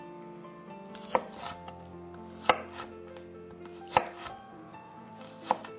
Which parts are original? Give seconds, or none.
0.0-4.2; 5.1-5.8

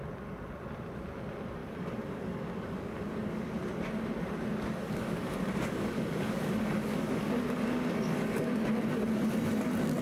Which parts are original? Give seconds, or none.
0.0-1.6; 3.5-4.8; 8.5-10.0

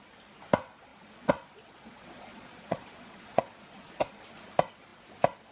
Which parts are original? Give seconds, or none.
0.0-0.9; 4.2-5.5

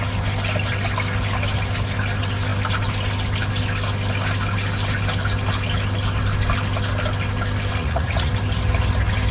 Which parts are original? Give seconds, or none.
0.0-7.8; 8.3-9.3

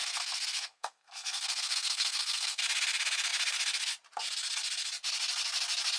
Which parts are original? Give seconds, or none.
2.6-6.0

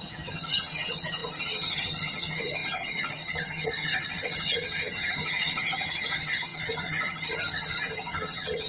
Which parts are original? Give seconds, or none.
none